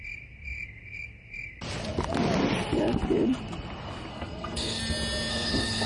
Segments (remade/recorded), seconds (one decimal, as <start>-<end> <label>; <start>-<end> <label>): 0.0-4.1 recorded; 4.1-4.8 remade; 4.8-5.3 recorded; 5.3-5.9 remade